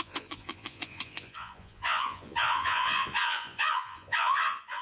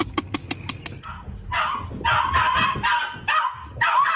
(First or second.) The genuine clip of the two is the second